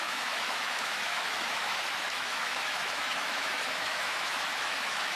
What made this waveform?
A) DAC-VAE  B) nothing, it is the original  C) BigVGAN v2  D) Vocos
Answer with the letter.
A